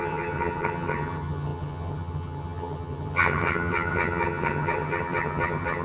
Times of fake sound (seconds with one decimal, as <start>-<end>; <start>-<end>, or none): 0.0-5.8